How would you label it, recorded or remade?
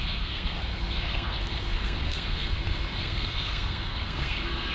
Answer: remade